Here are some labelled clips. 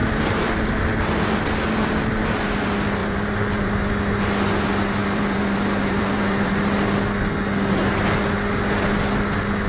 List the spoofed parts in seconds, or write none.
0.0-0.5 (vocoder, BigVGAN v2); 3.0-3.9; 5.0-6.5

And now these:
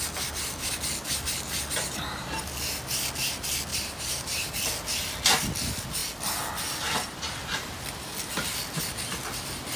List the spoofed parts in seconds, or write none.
3.7-4.5 (vocoder, BigVGAN v2)

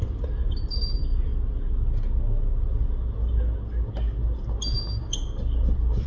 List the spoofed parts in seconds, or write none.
0.0-1.3 (vocoder, BigVGAN v2); 5.0-6.1

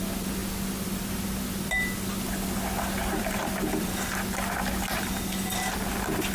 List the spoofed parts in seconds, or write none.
none

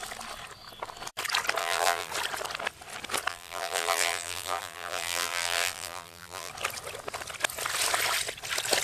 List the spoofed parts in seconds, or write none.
1.6-2.1 (vocoder, BigVGAN v2); 3.3-6.5